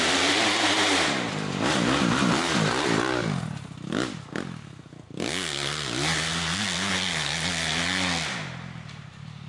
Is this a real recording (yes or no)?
yes